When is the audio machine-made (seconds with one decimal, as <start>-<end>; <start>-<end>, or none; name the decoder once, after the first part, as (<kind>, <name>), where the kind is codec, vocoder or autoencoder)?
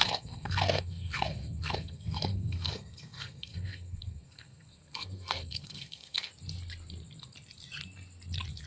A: 0.0-6.3 (codec, SNAC)